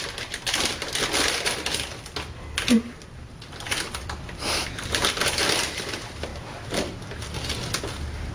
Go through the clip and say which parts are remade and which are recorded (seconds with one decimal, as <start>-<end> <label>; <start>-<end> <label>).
0.0-6.3 remade; 6.3-8.3 recorded